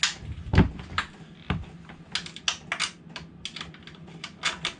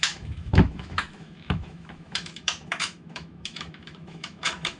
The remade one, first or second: second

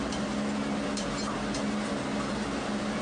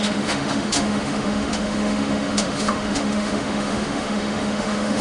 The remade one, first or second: second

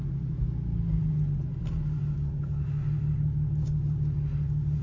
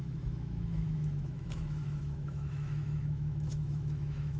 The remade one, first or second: second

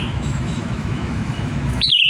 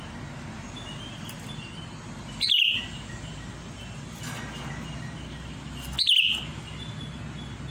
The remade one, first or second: first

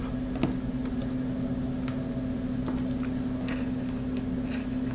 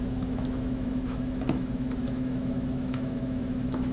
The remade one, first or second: second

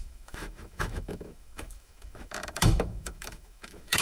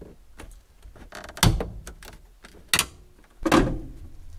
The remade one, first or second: first